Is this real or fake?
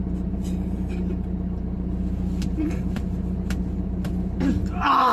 real